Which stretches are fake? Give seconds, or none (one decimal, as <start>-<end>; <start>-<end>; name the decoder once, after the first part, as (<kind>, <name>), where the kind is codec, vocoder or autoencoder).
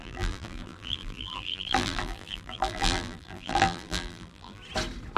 0.0-4.6 (vocoder, BigVGAN v2)